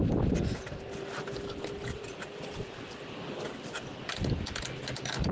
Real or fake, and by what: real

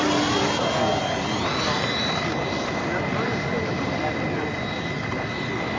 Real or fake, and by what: real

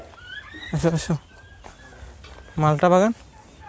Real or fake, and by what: real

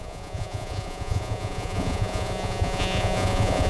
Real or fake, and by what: fake, vocoder, Vocos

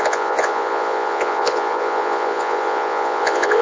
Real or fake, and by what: fake, vocoder, Vocos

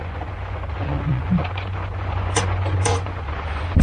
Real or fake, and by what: fake, vocoder, Vocos